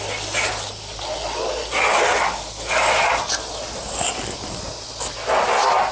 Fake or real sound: real